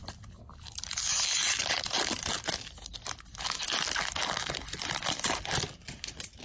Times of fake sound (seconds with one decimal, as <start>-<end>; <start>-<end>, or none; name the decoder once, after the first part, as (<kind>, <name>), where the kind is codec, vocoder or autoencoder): none